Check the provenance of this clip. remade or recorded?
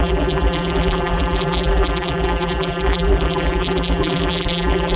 remade